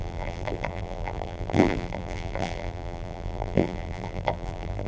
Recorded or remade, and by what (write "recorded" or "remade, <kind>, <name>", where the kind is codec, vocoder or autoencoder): remade, vocoder, BigVGAN v2